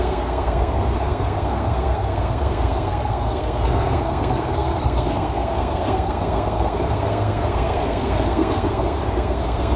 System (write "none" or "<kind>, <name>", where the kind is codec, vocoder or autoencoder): codec, SNAC